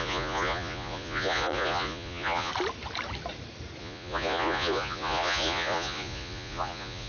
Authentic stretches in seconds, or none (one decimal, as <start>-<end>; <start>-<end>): 2.5-3.8